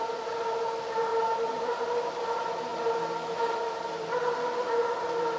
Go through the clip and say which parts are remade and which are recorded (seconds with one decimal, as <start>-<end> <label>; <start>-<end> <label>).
0.0-1.1 recorded; 1.1-1.7 remade; 1.7-5.4 recorded